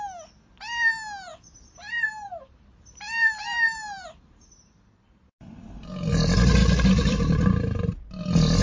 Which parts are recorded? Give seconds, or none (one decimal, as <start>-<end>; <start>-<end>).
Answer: 0.0-1.3; 4.7-6.6; 8.2-8.6